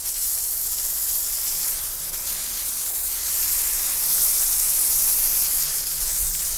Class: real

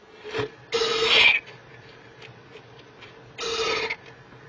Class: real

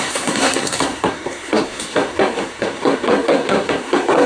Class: fake